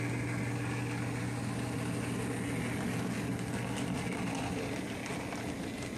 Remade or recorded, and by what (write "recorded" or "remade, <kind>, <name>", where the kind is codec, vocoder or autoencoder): recorded